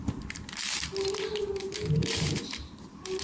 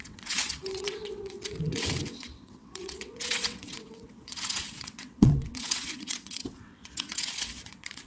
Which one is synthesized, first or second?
second